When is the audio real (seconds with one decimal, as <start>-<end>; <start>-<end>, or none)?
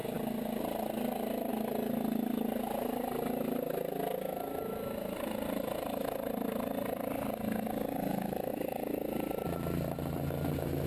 0.0-8.5